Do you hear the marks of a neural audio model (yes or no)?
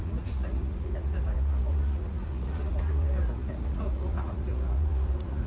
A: yes